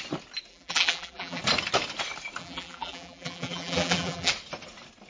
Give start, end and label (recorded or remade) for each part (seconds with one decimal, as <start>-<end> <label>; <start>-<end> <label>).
0.0-0.5 recorded; 0.5-1.4 remade; 1.4-2.4 recorded; 2.4-4.3 remade; 4.3-5.1 recorded